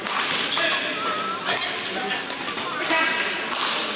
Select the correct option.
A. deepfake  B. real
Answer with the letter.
B